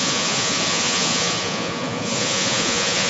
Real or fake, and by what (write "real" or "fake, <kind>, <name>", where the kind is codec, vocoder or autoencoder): fake, vocoder, Vocos